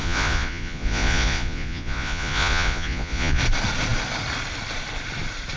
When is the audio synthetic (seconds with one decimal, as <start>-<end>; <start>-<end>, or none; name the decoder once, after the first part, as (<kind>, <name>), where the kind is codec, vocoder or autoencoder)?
0.0-3.4 (vocoder, Vocos)